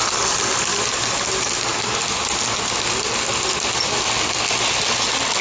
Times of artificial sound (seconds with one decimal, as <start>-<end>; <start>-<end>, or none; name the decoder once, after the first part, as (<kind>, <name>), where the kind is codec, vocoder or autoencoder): none